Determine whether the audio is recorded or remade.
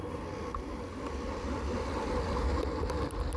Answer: recorded